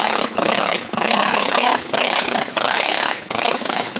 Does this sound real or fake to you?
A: fake